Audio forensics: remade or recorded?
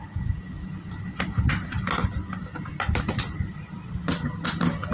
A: recorded